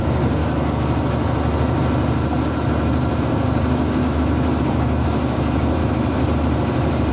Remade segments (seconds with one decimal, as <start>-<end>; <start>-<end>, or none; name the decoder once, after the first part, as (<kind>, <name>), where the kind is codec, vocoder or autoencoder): 0.0-0.4 (codec, DAC); 3.2-4.0; 4.6-5.8